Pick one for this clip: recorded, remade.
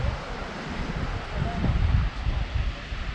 recorded